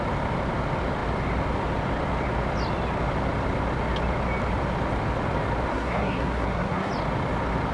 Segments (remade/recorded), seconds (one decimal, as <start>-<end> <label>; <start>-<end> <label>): 0.0-5.7 recorded; 5.7-6.9 remade; 6.9-7.7 recorded